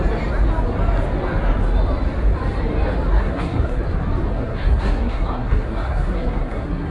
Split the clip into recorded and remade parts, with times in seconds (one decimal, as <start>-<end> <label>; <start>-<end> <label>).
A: 0.0-3.1 recorded; 3.1-3.8 remade; 3.8-4.3 recorded; 4.3-6.9 remade

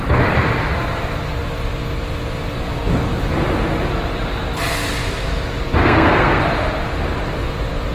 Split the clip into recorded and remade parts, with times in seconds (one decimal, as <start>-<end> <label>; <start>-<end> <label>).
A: 0.0-5.8 recorded; 5.8-6.4 remade; 6.4-7.9 recorded

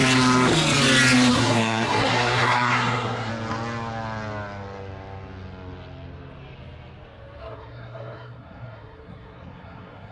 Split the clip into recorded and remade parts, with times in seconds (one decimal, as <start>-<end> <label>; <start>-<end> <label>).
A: 0.0-1.3 recorded; 1.3-3.3 remade; 3.3-7.4 recorded; 7.4-10.1 remade

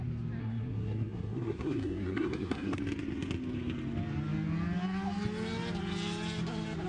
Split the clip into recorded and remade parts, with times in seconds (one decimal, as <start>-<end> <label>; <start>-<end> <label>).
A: 0.0-0.4 recorded; 0.4-2.8 remade; 2.8-6.9 recorded

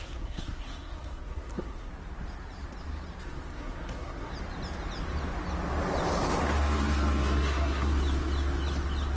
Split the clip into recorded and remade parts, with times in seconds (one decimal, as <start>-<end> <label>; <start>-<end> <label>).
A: 0.0-1.9 remade; 1.9-3.2 recorded; 3.2-4.3 remade; 4.3-6.4 recorded; 6.4-7.9 remade; 7.9-9.2 recorded

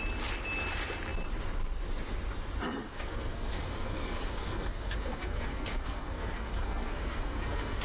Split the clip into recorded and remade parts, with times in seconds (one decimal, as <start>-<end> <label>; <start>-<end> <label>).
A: 0.0-2.9 recorded; 2.9-7.8 remade

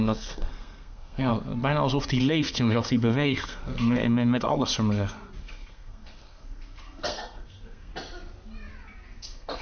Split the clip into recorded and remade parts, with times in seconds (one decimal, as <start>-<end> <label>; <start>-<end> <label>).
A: 0.0-1.3 remade; 1.3-2.2 recorded; 2.2-4.7 remade; 4.7-5.4 recorded; 5.4-7.9 remade; 7.9-9.2 recorded; 9.2-9.6 remade